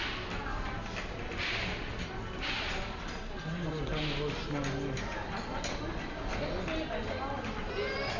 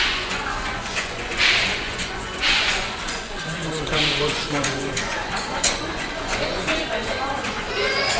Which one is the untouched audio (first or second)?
first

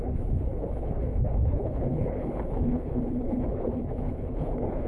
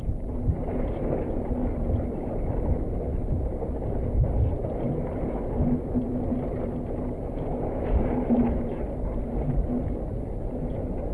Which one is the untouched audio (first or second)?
second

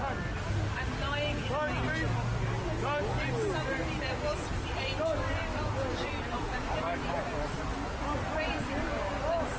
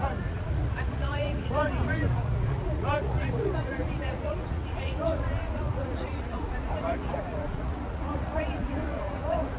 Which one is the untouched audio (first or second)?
first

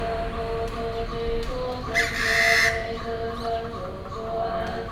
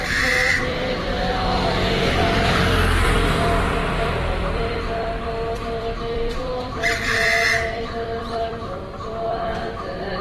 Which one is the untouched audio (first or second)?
first